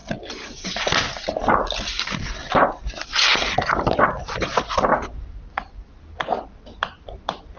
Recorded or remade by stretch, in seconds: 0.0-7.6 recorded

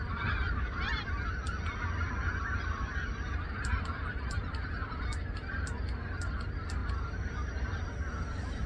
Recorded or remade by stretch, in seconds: 0.0-1.4 remade; 1.4-2.7 recorded; 2.7-5.1 remade; 5.1-6.3 recorded; 6.3-8.7 remade